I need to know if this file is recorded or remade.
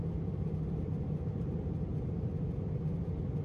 recorded